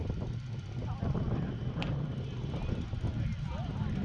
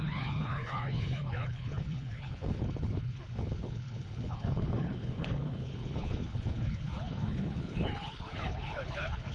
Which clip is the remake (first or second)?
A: second